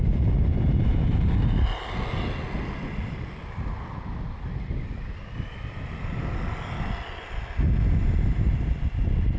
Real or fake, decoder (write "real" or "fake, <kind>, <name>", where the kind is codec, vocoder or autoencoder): real